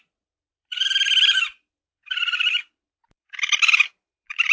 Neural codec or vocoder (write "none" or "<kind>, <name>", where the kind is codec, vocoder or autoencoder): vocoder, BigVGAN v2